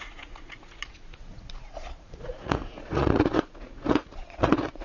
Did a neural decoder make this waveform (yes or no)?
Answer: yes